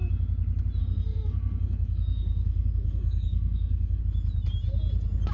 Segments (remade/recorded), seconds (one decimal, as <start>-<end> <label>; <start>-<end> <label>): 0.0-0.8 recorded; 0.8-4.0 remade; 4.0-5.3 recorded